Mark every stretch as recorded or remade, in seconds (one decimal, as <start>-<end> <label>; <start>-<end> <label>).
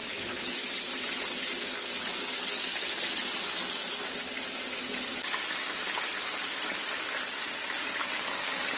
0.0-0.7 remade; 0.7-8.8 recorded